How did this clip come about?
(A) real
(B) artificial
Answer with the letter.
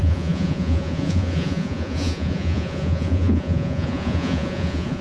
B